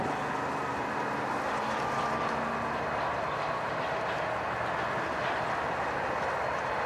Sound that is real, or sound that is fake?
real